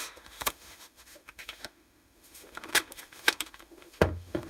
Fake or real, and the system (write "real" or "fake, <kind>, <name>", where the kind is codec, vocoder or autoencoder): fake, autoencoder, DAC-VAE